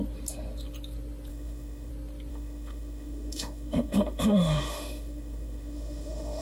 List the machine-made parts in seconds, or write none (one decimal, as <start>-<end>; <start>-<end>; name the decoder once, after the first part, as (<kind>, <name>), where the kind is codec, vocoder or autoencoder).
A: 1.3-1.9 (autoencoder, DAC-VAE); 2.3-6.4